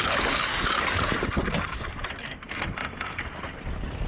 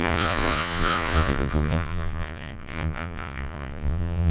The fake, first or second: second